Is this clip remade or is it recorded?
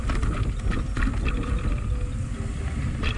recorded